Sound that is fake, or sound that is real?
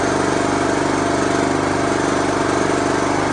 real